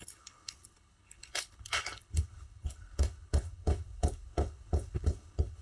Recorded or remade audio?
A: remade